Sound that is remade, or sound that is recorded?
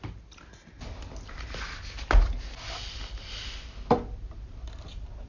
recorded